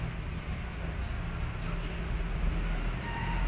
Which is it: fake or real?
real